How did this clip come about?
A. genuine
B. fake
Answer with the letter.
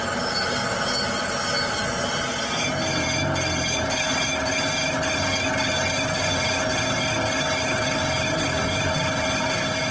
A